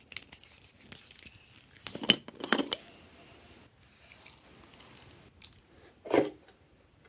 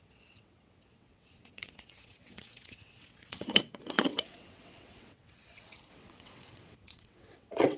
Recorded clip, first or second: first